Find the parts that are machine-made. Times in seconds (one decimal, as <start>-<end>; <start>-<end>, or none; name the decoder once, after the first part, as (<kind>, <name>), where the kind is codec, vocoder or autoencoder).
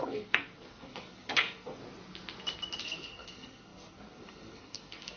0.0-1.8 (codec, SNAC); 2.8-5.2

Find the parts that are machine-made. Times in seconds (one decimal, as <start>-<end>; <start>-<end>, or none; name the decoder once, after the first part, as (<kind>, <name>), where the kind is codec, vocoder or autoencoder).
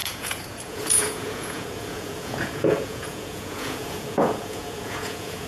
0.0-5.5 (vocoder, Vocos)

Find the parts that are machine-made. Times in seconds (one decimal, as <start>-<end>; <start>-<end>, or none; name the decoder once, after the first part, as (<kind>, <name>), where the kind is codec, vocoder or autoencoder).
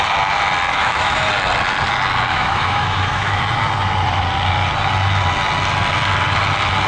0.7-1.3 (autoencoder, DAC-VAE); 2.3-3.4